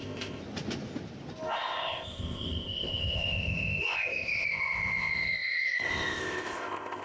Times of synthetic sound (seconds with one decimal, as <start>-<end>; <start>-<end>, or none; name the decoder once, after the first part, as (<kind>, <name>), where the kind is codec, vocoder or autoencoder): 0.0-0.4 (codec, ZipCodec); 1.5-7.0